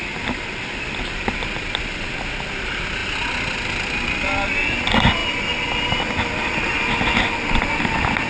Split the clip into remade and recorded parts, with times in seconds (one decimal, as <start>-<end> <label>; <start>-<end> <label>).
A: 0.0-8.3 recorded